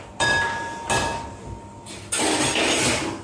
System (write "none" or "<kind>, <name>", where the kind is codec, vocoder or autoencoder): none